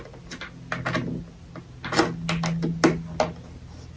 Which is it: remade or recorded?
recorded